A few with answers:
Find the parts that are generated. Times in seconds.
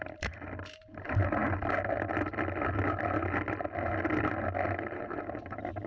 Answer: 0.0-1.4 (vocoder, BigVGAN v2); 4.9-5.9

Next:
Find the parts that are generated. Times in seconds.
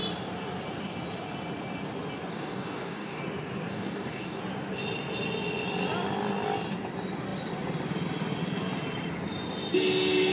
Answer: 2.3-3.2 (codec, DAC); 3.7-4.4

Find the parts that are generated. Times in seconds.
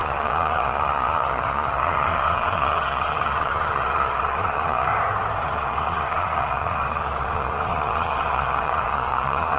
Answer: 0.0-4.9 (vocoder, Vocos); 5.4-9.6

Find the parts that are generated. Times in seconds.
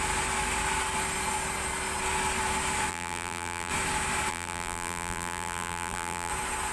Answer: 2.9-3.7 (vocoder, BigVGAN v2); 4.3-6.3